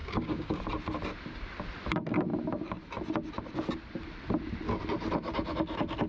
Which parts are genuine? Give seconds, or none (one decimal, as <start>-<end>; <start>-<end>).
0.6-6.1